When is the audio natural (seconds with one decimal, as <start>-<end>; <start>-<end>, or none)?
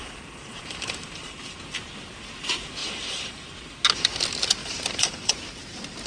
1.6-2.8; 3.5-4.6; 5.3-6.1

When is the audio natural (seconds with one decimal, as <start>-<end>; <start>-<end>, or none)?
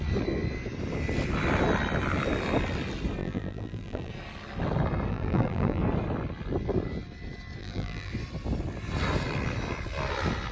0.0-3.2; 4.1-5.1; 5.8-7.6; 8.1-10.5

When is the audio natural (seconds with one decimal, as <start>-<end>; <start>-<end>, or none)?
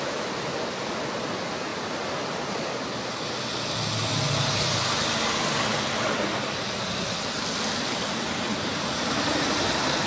0.0-8.5